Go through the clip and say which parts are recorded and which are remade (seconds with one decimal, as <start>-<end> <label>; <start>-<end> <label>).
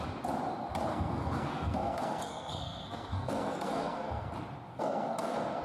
0.0-0.9 recorded; 0.9-4.3 remade; 4.3-4.7 recorded; 4.7-5.6 remade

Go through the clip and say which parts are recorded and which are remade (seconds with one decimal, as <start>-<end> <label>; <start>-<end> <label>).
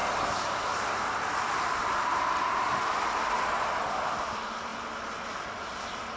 0.0-6.2 recorded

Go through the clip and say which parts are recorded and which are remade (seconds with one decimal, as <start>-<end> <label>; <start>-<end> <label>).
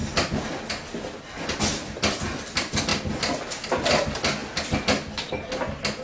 0.0-6.0 recorded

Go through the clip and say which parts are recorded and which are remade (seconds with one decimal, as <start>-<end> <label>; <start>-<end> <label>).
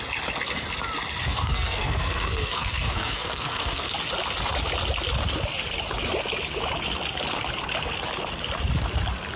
0.0-1.2 recorded; 1.2-3.9 remade; 3.9-9.4 recorded